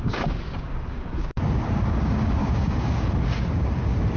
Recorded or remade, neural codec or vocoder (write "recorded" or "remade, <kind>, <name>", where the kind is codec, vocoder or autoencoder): remade, codec, DAC